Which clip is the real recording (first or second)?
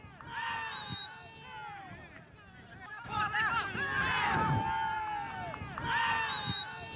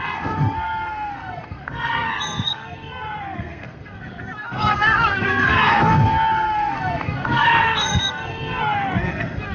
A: first